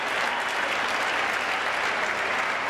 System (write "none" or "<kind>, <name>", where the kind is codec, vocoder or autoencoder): none